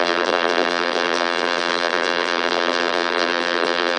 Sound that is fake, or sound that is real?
fake